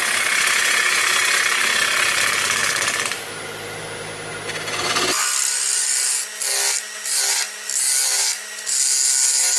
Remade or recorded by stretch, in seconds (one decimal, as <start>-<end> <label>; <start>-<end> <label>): 0.0-9.6 recorded